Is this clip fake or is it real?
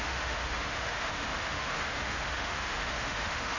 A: fake